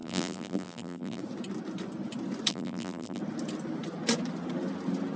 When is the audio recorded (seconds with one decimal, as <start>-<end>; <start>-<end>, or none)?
1.2-2.5; 3.2-5.2